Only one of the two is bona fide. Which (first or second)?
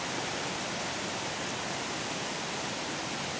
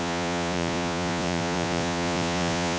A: first